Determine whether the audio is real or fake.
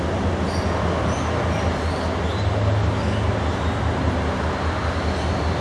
real